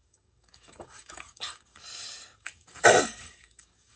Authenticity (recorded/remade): remade